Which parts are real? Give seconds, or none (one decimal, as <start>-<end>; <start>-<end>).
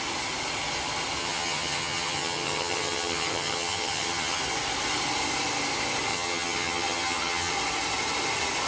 0.0-1.2; 4.4-6.1; 7.5-8.7